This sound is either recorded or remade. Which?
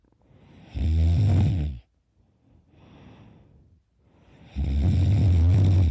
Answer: recorded